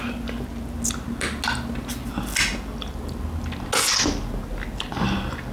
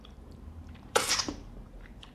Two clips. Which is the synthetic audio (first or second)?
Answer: second